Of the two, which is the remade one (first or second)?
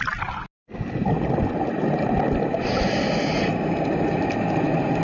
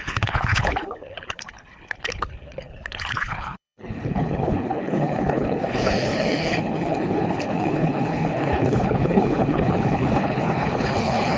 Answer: second